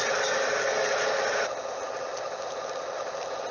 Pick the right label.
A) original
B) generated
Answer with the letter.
A